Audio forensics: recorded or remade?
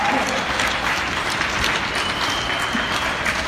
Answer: recorded